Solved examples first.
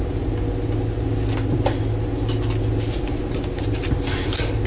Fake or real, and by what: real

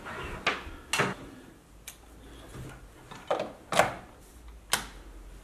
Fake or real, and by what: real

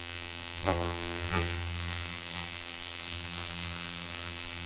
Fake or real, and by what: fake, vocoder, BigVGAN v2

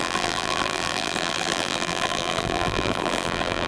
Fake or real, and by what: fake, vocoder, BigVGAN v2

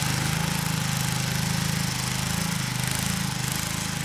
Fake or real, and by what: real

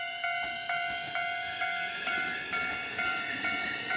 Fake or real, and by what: fake, vocoder, BigVGAN v2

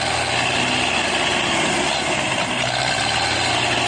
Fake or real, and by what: real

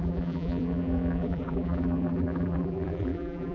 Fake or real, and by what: fake, vocoder, BigVGAN v2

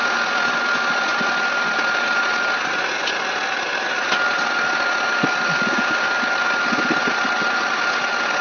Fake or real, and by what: real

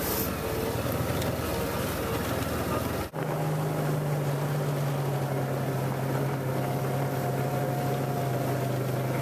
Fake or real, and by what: real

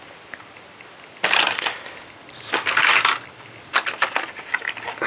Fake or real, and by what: fake, vocoder, BigVGAN v2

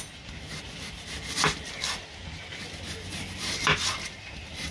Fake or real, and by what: real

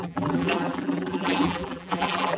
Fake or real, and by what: fake, vocoder, BigVGAN v2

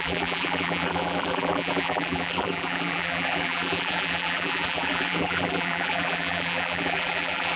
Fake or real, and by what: fake, vocoder, BigVGAN v2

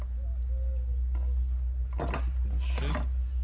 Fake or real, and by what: real